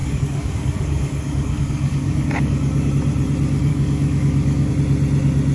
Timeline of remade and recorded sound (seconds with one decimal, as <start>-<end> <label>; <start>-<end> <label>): 0.0-2.9 remade; 2.9-3.7 recorded; 3.7-4.7 remade; 4.7-5.5 recorded